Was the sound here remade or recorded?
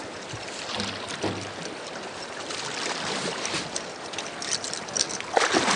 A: recorded